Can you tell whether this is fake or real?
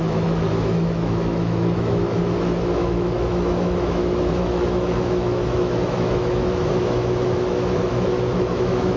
fake